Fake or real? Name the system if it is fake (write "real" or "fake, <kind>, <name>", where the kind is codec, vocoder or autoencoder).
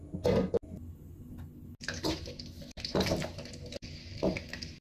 real